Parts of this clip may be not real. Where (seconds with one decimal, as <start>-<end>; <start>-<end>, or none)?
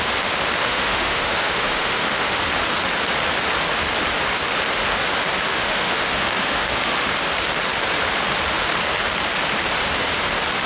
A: 0.6-2.4; 5.5-7.1